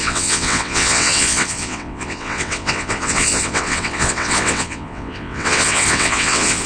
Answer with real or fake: fake